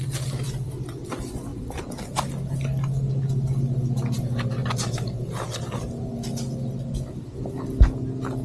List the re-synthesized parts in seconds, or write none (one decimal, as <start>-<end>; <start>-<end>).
none